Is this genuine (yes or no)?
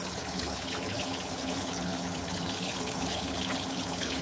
no